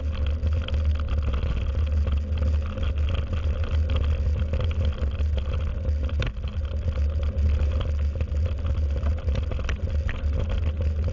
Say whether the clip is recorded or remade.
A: recorded